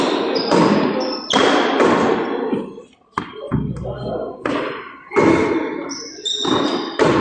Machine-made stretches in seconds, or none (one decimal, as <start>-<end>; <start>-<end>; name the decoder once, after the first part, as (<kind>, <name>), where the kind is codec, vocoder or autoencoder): none